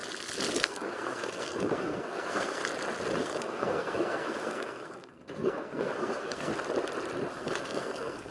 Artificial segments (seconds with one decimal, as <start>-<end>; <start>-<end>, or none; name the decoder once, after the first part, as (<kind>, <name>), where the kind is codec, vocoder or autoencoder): 0.5-2.6 (codec, SNAC); 3.2-6.5; 7.3-8.3